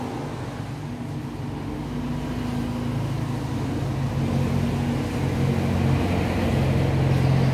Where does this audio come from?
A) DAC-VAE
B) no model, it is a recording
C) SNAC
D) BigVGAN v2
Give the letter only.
B